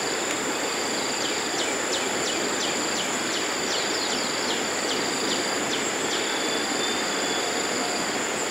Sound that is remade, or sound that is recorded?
recorded